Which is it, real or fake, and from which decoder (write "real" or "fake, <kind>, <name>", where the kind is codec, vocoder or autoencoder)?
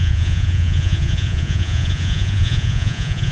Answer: fake, vocoder, Vocos